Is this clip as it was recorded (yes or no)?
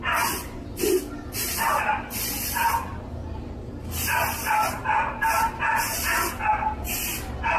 yes